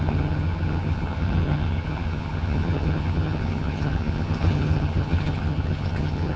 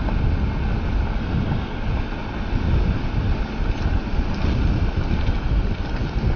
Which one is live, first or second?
second